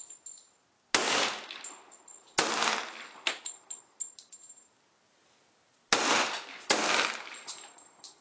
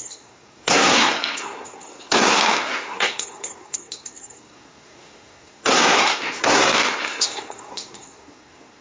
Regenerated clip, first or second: second